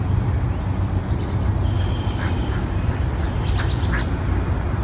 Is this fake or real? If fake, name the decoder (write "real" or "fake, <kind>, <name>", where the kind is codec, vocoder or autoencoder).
real